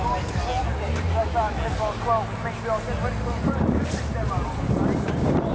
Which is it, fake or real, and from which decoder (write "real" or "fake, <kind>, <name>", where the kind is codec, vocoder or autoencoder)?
real